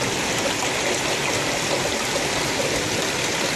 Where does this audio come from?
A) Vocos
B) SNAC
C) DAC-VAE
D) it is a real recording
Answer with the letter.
D